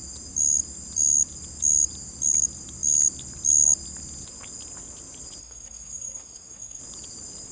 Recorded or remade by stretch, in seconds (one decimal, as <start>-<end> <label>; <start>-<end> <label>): 0.0-5.4 recorded; 5.4-6.8 remade; 6.8-7.5 recorded